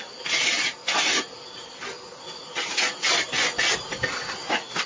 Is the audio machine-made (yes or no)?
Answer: no